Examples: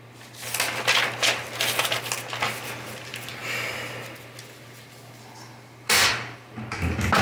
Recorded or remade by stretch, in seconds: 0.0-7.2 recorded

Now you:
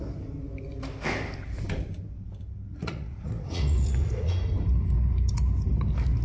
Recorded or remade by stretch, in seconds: 0.0-2.7 recorded; 2.7-4.3 remade; 4.3-6.2 recorded

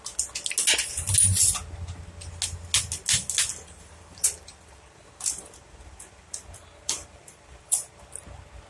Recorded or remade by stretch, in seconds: 0.0-3.5 recorded; 3.5-7.9 remade; 7.9-8.7 recorded

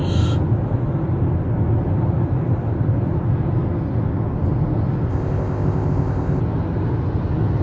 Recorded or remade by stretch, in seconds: 0.0-5.1 recorded; 5.1-6.4 remade; 6.4-7.6 recorded

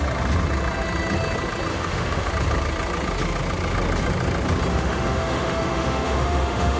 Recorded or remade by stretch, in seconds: 0.0-1.7 recorded; 1.7-2.3 remade; 2.3-4.7 recorded; 4.7-6.8 remade

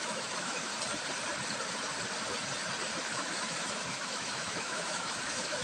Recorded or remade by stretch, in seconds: 0.0-0.7 remade; 0.7-3.0 recorded; 3.0-5.6 remade

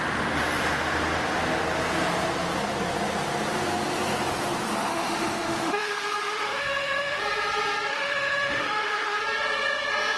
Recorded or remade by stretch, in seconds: 0.0-4.9 recorded; 4.9-7.2 remade; 7.2-7.9 recorded; 7.9-9.2 remade; 9.2-10.2 recorded

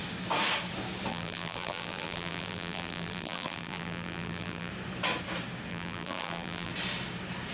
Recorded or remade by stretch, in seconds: 0.0-1.1 recorded; 1.1-4.7 remade; 4.7-5.7 recorded; 5.7-6.7 remade; 6.7-7.5 recorded